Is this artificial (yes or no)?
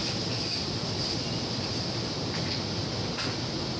no